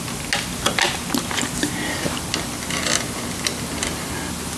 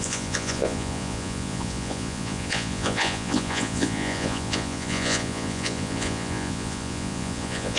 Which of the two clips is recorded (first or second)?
first